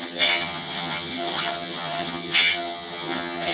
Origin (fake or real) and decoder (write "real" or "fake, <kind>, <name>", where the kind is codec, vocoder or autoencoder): fake, vocoder, HiFi-GAN